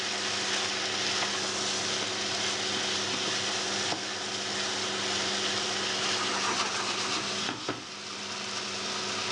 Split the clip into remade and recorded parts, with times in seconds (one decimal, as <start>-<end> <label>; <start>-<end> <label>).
0.0-7.4 recorded; 7.4-7.9 remade; 7.9-9.3 recorded